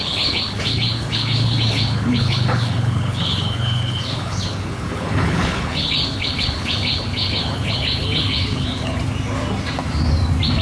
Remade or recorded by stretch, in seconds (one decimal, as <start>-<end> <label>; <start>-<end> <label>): 0.0-9.0 remade; 9.0-10.6 recorded